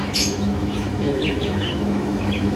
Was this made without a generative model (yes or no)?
no